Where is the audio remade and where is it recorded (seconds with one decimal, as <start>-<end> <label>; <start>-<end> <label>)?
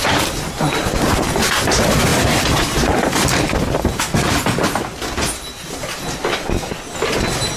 0.0-7.6 recorded